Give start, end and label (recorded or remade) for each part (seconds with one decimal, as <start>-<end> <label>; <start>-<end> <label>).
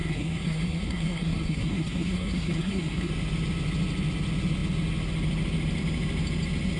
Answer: 0.0-3.1 remade; 3.1-6.8 recorded